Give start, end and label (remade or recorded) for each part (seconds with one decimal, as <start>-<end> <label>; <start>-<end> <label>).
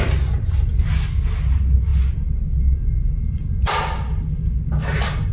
0.0-5.3 recorded